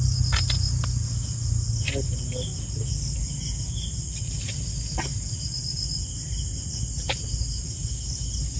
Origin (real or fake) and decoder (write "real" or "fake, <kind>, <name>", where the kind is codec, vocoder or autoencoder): real